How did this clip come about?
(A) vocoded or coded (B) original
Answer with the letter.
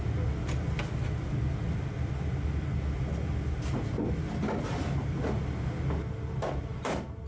B